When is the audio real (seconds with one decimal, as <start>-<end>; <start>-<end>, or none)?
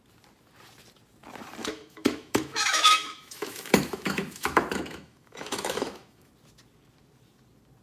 0.0-1.6; 6.3-7.8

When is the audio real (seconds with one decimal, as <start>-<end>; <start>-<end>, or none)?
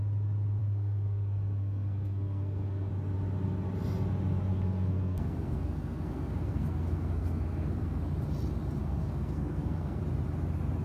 0.0-0.6; 2.9-4.5; 8.0-8.8; 10.0-10.8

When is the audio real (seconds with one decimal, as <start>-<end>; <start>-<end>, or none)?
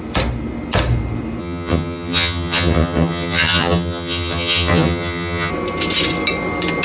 0.0-1.4; 5.5-6.8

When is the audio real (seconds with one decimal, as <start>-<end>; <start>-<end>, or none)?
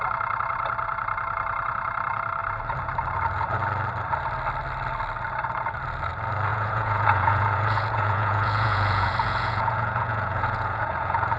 0.0-6.5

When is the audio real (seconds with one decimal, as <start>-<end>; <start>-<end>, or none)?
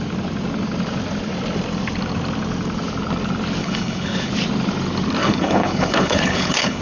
0.0-3.6; 4.3-5.2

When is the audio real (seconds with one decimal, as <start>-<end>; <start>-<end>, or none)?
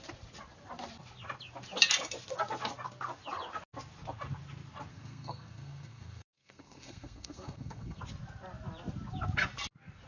0.0-4.9; 8.0-10.1